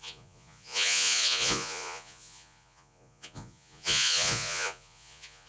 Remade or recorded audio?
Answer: remade